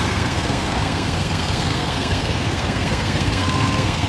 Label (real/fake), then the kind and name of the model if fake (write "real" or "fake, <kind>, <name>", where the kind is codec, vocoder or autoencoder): fake, codec, SNAC